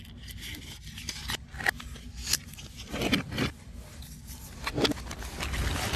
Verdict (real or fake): real